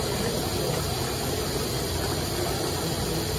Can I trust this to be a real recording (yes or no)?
yes